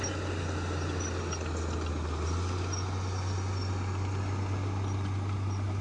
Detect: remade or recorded recorded